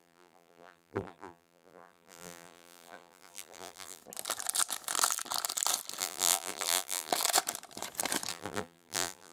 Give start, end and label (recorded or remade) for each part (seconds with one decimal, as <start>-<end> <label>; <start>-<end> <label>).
0.0-4.0 remade; 4.0-6.0 recorded; 6.0-7.1 remade; 7.1-8.3 recorded; 8.3-9.3 remade